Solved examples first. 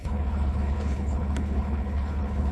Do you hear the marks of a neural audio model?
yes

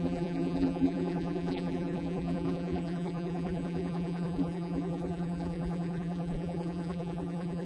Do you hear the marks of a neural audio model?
yes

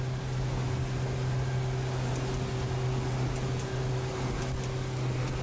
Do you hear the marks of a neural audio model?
no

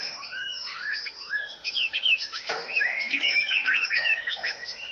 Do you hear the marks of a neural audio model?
yes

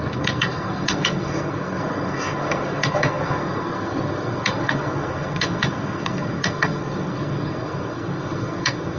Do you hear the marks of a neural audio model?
yes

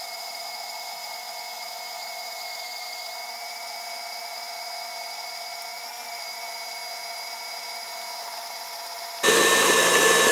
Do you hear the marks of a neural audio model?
no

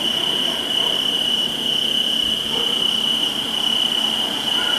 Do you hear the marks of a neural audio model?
no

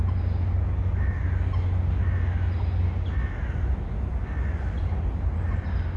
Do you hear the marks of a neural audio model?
no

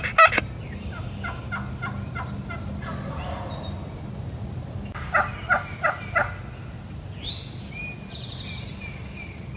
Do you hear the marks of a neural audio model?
no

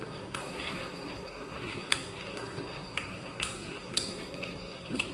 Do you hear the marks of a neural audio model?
yes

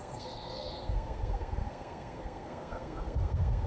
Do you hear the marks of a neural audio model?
yes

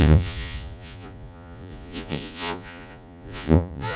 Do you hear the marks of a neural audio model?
yes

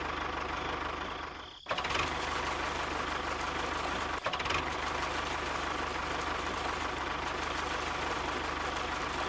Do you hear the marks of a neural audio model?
no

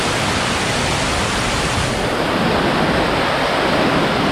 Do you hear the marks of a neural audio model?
no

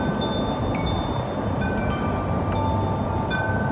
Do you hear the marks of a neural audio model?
no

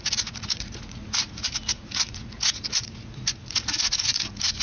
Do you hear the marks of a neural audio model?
yes